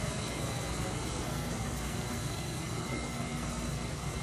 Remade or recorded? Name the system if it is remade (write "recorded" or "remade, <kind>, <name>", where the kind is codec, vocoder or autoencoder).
remade, codec, SNAC